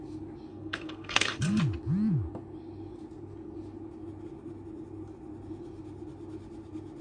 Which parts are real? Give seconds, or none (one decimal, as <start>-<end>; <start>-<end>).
0.0-0.5; 1.6-7.0